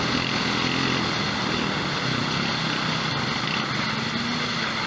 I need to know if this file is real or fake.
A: real